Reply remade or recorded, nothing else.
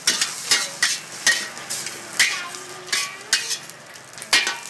recorded